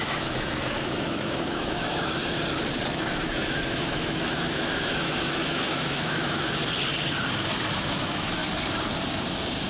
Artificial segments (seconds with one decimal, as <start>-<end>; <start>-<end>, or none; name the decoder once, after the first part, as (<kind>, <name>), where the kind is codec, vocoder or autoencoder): 0.0-2.2 (autoencoder, DAC-VAE); 2.8-6.6; 7.7-8.4

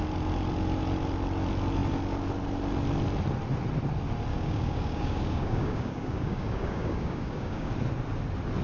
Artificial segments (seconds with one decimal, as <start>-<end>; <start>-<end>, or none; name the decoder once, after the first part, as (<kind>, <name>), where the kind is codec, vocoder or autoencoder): 4.3-7.7 (codec, DAC)

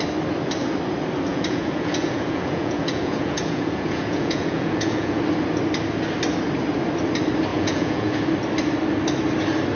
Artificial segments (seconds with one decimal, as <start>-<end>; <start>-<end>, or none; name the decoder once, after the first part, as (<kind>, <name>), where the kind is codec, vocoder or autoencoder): 1.3-5.2 (vocoder, Vocos); 7.5-8.2

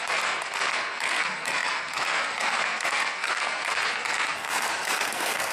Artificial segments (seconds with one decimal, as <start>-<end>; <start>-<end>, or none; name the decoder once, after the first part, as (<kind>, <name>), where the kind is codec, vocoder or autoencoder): 0.0-5.5 (codec, SNAC)

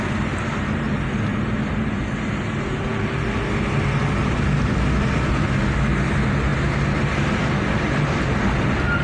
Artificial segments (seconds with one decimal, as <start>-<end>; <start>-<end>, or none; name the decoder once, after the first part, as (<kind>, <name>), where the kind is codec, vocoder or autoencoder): none

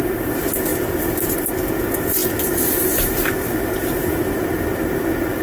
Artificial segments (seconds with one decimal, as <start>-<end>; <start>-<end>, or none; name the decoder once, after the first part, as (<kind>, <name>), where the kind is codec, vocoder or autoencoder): none

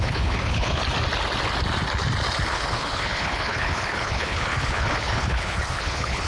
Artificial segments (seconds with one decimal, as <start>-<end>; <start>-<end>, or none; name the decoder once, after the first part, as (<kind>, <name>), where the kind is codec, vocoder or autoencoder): 0.0-0.8 (codec, HILCodec); 2.5-6.3